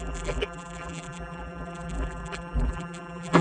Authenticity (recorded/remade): remade